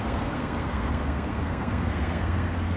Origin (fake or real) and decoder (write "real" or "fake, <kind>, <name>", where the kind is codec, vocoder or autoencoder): fake, codec, SNAC